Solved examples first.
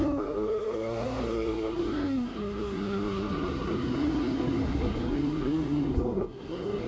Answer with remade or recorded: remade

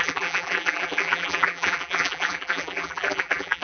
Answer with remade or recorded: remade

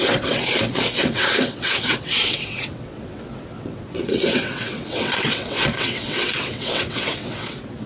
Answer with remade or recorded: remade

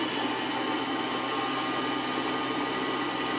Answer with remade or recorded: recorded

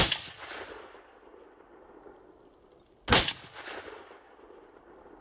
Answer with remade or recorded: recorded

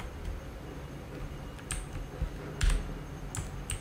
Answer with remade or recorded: recorded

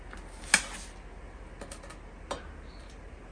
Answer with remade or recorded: recorded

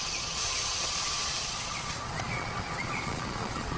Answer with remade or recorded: remade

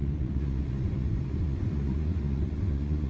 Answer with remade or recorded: remade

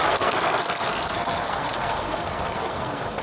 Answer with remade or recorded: remade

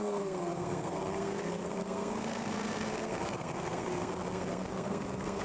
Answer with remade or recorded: remade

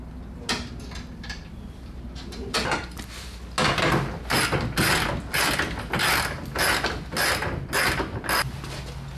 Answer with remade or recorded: recorded